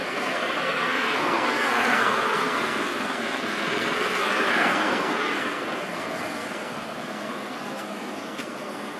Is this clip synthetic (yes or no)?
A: yes